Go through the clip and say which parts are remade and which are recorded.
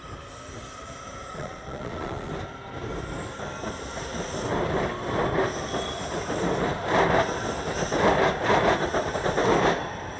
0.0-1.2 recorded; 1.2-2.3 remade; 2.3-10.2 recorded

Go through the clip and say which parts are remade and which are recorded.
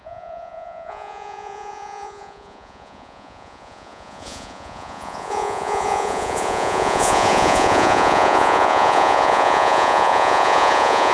0.0-11.1 remade